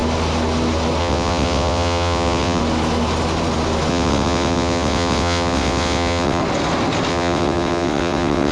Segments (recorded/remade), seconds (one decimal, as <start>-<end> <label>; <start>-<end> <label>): 0.0-1.0 recorded; 1.0-2.6 remade; 2.6-3.9 recorded; 3.9-6.4 remade; 6.4-7.1 recorded; 7.1-8.5 remade